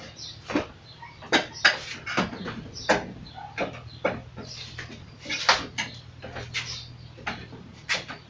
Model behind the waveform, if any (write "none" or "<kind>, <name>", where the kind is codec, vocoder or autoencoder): none